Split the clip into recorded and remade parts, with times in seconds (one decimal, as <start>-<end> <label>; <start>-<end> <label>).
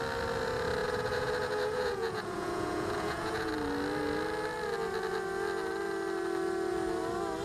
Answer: 0.0-0.8 recorded; 0.8-3.5 remade; 3.5-7.4 recorded